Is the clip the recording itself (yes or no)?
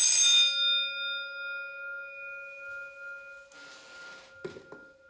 yes